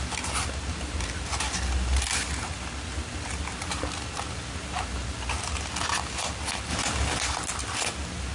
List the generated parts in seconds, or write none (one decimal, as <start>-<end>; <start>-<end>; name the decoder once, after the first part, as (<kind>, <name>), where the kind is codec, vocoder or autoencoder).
none